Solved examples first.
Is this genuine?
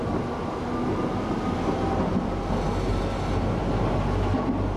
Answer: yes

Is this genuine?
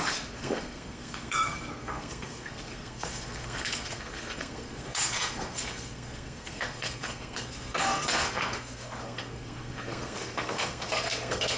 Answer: no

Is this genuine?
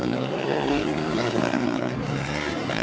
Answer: no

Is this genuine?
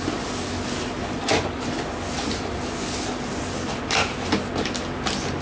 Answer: yes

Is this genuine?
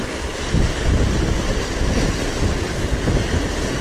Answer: yes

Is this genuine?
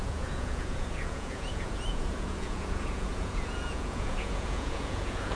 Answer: no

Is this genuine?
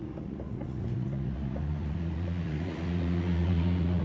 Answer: no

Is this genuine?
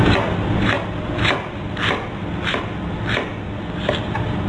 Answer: yes